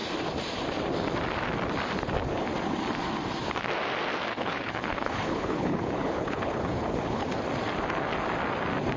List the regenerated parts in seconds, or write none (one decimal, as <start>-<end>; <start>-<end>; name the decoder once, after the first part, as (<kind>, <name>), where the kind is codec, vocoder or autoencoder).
4.3-7.4 (codec, HILCodec)

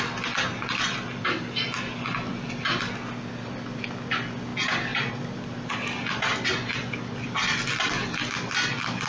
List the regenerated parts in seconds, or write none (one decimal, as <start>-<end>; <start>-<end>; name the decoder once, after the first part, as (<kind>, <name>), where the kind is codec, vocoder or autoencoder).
none